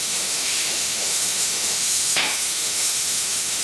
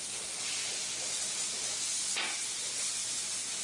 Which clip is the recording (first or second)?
second